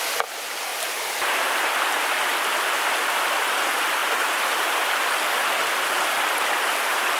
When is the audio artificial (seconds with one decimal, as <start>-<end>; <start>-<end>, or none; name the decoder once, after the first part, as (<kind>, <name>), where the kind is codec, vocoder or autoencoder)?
0.7-1.7 (vocoder, BigVGAN v2); 4.0-4.9